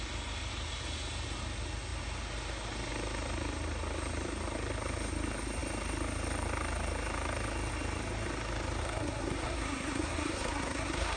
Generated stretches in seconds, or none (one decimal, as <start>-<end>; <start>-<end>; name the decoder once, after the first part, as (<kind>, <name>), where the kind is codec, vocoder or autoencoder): 8.8-11.2 (codec, SNAC)